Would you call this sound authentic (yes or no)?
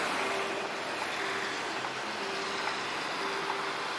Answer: yes